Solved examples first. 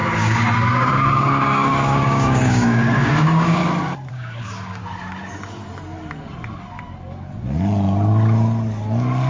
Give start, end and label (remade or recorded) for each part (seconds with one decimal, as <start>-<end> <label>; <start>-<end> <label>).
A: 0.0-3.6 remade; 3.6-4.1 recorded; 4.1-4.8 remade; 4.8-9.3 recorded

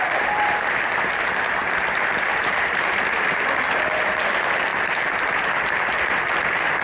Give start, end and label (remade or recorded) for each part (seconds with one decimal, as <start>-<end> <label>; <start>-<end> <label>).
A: 0.0-1.6 remade; 1.6-3.0 recorded; 3.0-6.8 remade

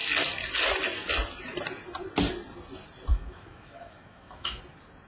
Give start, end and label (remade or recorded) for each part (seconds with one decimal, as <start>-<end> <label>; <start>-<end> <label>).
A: 0.0-3.1 recorded; 3.1-4.6 remade; 4.6-5.1 recorded

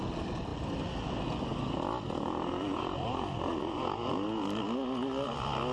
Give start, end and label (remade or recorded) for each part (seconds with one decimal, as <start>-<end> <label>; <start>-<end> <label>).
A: 0.0-5.7 recorded